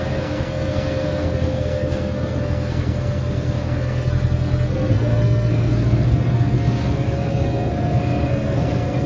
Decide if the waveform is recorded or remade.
remade